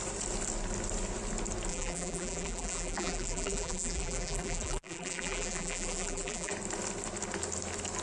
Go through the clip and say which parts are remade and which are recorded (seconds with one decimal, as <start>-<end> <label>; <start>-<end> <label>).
0.0-1.7 recorded; 1.7-6.5 remade; 6.5-8.0 recorded